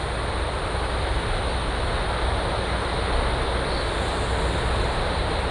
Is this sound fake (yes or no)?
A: no